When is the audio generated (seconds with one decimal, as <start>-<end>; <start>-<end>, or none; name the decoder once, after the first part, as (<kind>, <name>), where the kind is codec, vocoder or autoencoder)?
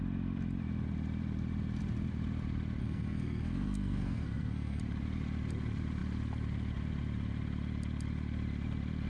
2.8-4.8 (codec, SNAC)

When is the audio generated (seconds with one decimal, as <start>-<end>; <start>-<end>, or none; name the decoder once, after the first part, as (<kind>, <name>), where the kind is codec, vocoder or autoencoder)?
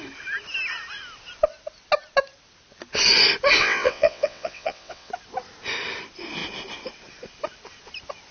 3.6-5.1 (vocoder, WaveNeXt)